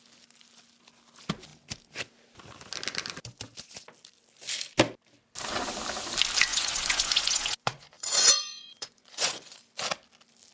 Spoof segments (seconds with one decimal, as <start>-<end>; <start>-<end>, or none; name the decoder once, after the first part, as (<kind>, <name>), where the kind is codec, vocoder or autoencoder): 6.5-9.6 (vocoder, Vocos)